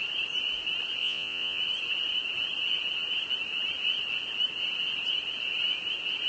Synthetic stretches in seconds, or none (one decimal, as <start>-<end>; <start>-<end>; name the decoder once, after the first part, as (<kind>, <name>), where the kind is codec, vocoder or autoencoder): 1.0-1.6 (vocoder, Vocos)